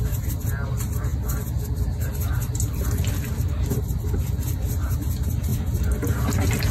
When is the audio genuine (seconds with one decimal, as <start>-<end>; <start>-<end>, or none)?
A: 0.0-6.7